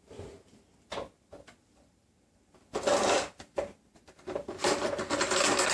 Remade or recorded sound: recorded